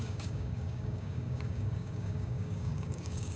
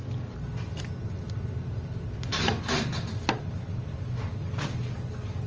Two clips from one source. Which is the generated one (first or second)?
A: first